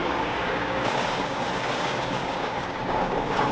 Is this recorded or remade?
remade